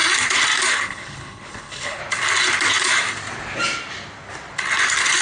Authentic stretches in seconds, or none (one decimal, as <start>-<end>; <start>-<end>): 0.0-0.7; 2.0-5.2